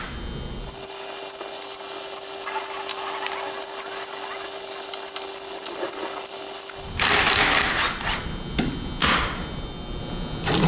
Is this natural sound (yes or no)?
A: yes